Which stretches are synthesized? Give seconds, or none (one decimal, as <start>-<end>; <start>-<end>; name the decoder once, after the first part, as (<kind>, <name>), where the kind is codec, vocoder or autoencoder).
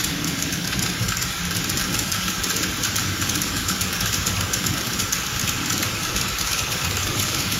0.0-1.4 (codec, DAC); 1.8-2.4; 3.0-7.6